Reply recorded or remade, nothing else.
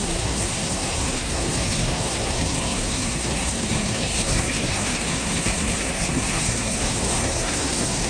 remade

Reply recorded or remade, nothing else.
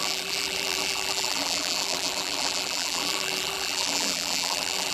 remade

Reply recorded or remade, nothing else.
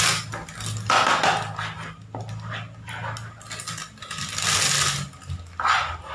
recorded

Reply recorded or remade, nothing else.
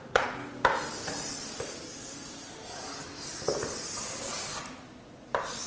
recorded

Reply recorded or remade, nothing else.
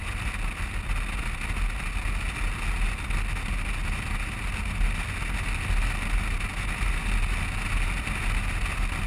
recorded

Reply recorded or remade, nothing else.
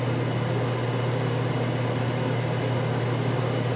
recorded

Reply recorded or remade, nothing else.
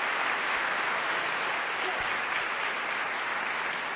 recorded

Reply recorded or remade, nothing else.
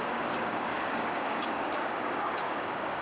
remade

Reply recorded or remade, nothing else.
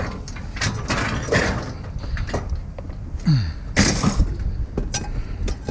recorded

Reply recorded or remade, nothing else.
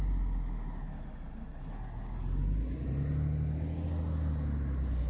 recorded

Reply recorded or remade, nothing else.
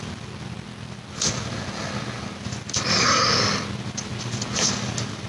recorded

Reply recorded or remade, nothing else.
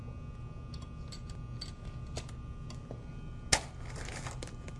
recorded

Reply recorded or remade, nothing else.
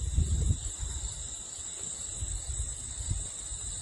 recorded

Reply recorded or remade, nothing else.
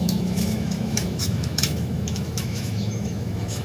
remade